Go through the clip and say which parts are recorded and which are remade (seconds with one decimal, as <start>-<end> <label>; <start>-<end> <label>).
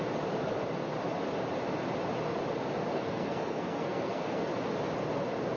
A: 0.0-2.9 recorded; 2.9-4.5 remade; 4.5-5.6 recorded